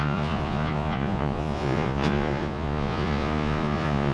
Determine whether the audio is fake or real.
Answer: fake